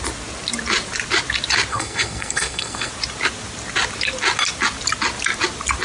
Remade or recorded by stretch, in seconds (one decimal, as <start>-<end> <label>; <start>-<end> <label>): 0.0-1.7 recorded; 1.7-2.9 remade; 2.9-5.8 recorded